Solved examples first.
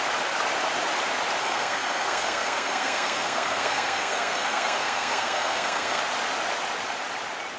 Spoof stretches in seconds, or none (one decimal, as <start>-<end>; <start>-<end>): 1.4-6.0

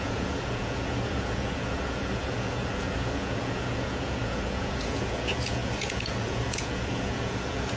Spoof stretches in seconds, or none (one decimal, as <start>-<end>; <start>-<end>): 0.0-7.8

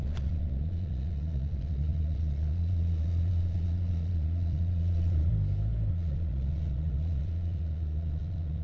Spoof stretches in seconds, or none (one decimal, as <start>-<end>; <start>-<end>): 0.0-5.3; 5.9-8.6

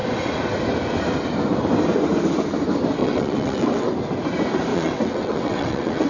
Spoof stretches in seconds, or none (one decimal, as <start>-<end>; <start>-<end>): 3.0-3.9; 4.7-6.1

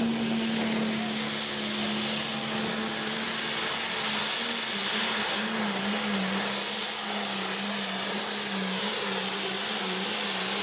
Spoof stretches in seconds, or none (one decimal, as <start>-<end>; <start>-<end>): none